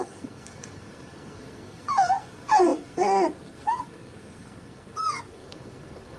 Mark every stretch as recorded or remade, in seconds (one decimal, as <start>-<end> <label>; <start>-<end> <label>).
0.0-6.2 remade